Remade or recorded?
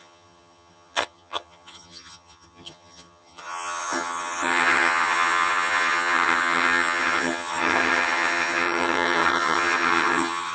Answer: remade